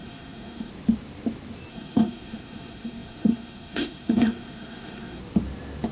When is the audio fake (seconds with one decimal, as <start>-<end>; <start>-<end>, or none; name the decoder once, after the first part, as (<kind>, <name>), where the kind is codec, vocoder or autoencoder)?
0.0-0.7 (codec, SNAC); 1.7-5.2